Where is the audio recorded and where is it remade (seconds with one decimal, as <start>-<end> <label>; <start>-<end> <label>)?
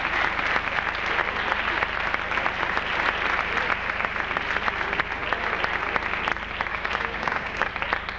0.0-6.7 recorded; 6.7-7.7 remade; 7.7-8.2 recorded